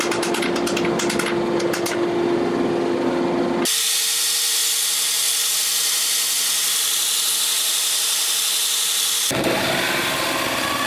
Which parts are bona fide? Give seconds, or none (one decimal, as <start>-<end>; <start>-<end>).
0.0-10.9